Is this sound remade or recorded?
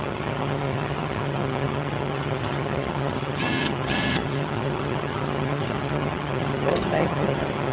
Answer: remade